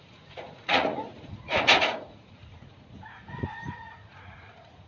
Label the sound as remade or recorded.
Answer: remade